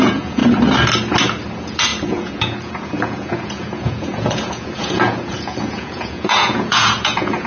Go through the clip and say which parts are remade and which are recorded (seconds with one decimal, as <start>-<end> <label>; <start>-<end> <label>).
0.0-0.4 remade; 0.4-1.5 recorded; 1.5-7.5 remade